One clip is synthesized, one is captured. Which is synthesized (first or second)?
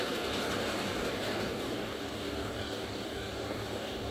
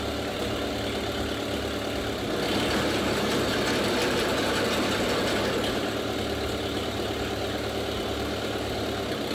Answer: first